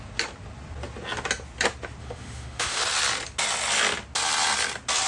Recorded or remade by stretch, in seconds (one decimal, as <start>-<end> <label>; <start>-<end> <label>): 0.0-2.0 recorded; 2.0-2.8 remade; 2.8-5.1 recorded